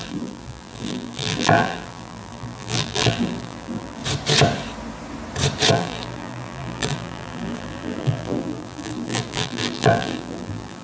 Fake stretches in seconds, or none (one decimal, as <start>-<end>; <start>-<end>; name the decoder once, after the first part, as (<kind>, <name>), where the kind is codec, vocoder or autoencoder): 0.0-4.0 (vocoder, BigVGAN v2); 5.7-10.8